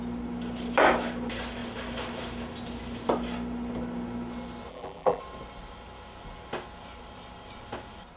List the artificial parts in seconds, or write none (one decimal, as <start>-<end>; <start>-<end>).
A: 4.7-5.2